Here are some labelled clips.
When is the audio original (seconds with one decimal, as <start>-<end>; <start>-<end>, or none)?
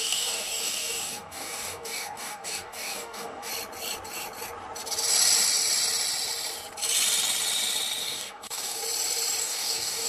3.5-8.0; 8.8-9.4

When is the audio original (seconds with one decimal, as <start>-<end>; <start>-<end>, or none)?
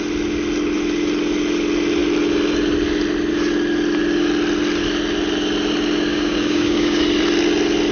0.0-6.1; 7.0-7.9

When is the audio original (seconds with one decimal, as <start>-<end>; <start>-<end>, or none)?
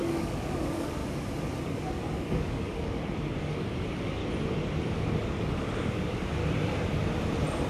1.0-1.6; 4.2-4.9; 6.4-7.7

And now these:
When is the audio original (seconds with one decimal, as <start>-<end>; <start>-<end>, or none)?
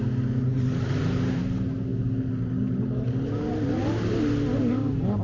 0.0-5.2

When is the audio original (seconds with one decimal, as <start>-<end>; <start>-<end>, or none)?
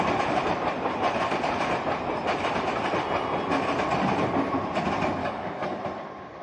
0.0-5.2; 5.8-6.4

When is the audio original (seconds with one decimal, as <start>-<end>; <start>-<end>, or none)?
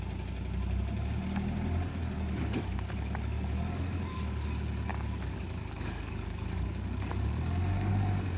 0.0-1.9; 4.5-4.9; 7.9-8.4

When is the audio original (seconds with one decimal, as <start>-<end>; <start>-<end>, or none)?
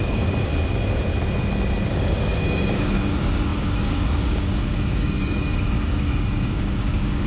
0.5-1.9